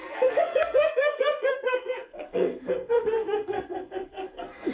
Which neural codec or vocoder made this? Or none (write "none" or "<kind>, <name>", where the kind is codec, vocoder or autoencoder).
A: codec, SNAC